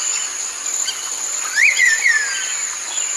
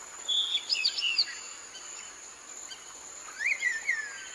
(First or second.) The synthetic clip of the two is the first